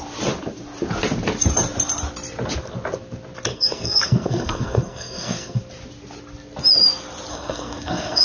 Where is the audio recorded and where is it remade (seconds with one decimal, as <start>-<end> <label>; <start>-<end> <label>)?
0.0-3.5 recorded; 3.5-5.6 remade; 5.6-7.3 recorded; 7.3-8.2 remade